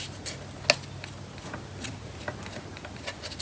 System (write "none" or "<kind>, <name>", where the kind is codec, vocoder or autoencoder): none